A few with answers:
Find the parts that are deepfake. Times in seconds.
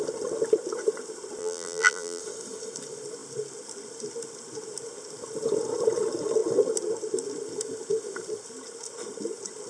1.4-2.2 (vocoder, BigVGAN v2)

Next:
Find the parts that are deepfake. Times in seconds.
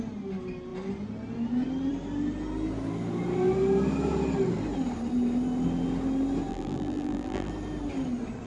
6.5-7.5 (vocoder, BigVGAN v2)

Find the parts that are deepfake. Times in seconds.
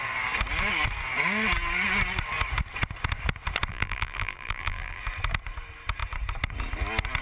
3.7-5.0 (vocoder, BigVGAN v2)